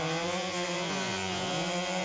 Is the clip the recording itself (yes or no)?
no